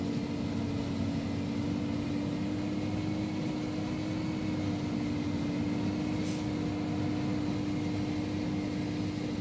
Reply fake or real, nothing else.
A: real